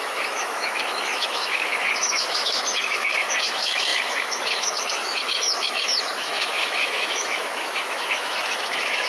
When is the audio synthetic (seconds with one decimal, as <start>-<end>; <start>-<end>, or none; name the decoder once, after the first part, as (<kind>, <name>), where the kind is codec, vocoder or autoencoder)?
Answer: 0.0-9.1 (autoencoder, DAC-VAE)

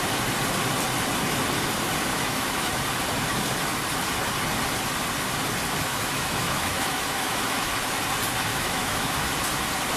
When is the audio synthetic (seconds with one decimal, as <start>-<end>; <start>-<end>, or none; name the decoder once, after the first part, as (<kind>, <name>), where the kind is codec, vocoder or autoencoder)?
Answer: 2.1-2.7 (autoencoder, DAC-VAE); 5.9-7.7; 8.5-9.3

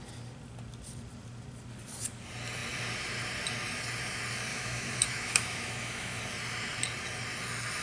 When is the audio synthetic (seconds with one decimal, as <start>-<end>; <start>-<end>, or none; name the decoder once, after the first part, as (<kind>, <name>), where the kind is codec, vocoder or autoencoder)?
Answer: 4.5-6.2 (autoencoder, DAC-VAE)

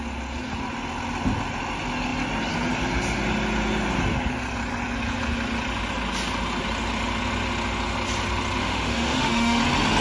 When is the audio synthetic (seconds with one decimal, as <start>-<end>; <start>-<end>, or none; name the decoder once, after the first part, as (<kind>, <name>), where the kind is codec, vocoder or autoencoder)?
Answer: 8.6-9.6 (autoencoder, DAC-VAE)